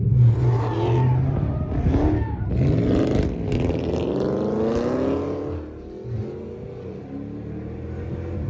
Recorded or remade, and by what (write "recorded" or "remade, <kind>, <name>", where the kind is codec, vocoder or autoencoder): recorded